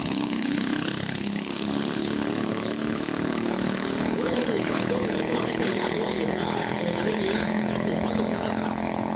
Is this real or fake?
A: fake